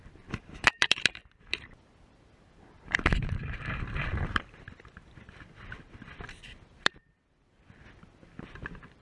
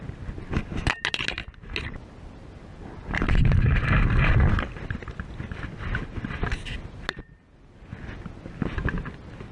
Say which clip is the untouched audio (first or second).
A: second